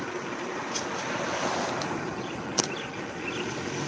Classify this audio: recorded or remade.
recorded